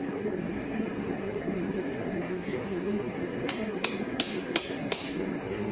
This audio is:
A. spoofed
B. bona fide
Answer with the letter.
A